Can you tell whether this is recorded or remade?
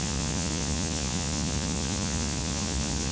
remade